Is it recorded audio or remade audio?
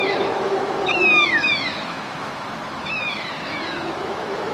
remade